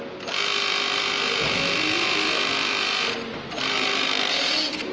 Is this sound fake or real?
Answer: real